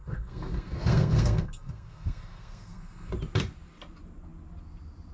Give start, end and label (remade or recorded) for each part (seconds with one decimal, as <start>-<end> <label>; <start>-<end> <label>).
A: 0.0-3.1 remade; 3.1-5.1 recorded

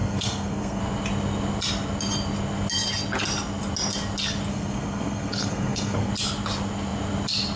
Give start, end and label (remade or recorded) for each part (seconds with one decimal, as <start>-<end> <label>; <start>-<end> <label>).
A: 0.0-0.8 remade; 0.8-4.5 recorded; 4.5-6.1 remade; 6.1-7.6 recorded

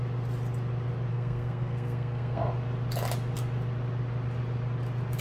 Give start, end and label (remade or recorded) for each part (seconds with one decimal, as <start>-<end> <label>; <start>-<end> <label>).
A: 0.0-1.1 recorded; 1.1-2.5 remade; 2.5-5.2 recorded

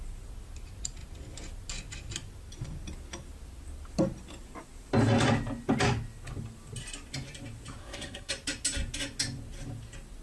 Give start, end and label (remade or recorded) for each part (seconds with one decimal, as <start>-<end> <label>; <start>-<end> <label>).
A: 0.0-7.8 recorded; 7.8-8.3 remade; 8.3-10.2 recorded

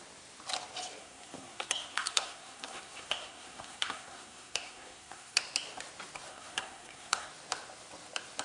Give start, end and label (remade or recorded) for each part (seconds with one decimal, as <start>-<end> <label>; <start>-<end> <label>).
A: 0.0-1.0 recorded; 1.0-5.4 remade; 5.4-6.3 recorded; 6.3-7.3 remade; 7.3-8.4 recorded